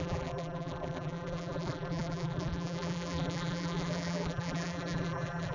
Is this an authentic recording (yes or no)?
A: no